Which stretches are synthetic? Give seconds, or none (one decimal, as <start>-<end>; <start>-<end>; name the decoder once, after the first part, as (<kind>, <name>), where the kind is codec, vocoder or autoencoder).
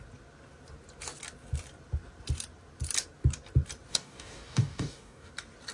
3.9-5.3 (codec, DAC)